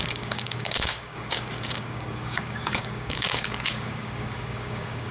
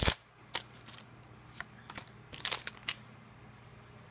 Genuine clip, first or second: second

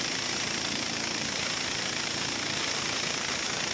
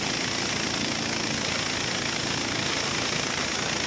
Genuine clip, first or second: second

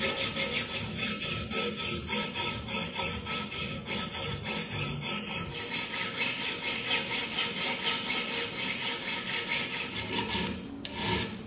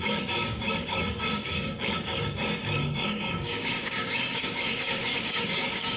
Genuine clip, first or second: first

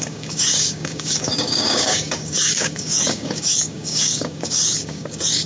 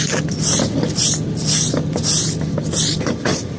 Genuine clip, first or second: second